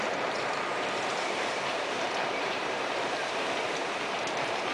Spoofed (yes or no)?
yes